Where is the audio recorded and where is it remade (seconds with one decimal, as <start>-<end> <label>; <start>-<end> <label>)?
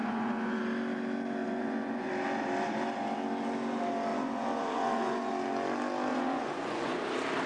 0.0-0.6 remade; 0.6-1.4 recorded; 1.4-2.1 remade; 2.1-4.1 recorded; 4.1-5.3 remade; 5.3-6.1 recorded; 6.1-7.0 remade; 7.0-7.5 recorded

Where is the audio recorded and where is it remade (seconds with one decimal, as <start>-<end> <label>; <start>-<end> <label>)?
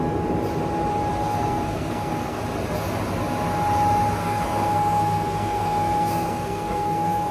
0.0-1.2 recorded; 1.2-2.4 remade; 2.4-4.2 recorded; 4.2-7.3 remade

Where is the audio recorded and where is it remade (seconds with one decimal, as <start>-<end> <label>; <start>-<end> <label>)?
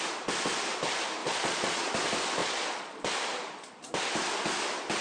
0.0-1.2 recorded; 1.2-1.9 remade; 1.9-2.4 recorded; 2.4-3.0 remade; 3.0-5.0 recorded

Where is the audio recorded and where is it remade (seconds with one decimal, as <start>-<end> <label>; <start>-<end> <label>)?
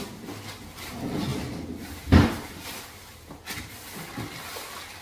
0.0-5.0 recorded